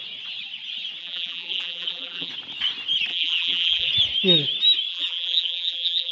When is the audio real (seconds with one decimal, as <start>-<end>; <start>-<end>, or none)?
0.0-1.0; 2.3-3.1; 3.9-4.9